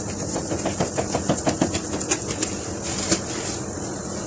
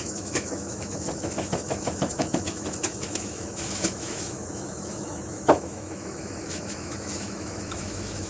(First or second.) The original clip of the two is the first